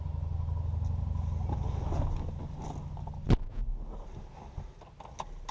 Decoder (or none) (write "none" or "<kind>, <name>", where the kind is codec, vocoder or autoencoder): none